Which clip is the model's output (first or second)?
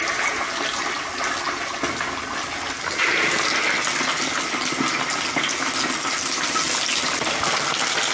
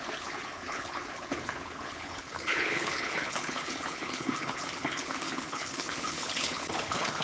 second